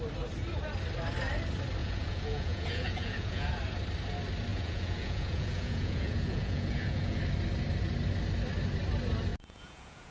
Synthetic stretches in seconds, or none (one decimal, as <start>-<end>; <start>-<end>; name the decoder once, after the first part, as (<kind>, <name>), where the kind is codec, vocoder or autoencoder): 1.8-3.5 (vocoder, Vocos); 4.5-7.2; 9.3-10.1